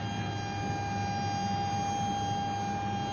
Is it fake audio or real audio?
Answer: real